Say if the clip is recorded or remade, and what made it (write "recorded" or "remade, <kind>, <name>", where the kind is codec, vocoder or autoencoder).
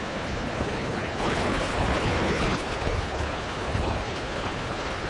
remade, codec, HILCodec